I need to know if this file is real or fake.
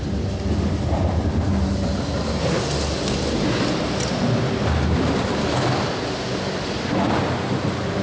real